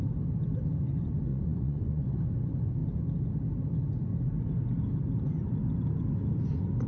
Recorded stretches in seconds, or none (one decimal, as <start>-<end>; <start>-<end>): 0.0-1.3; 2.2-6.9